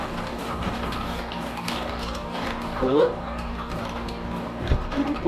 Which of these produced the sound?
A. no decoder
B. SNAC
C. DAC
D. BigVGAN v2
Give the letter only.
C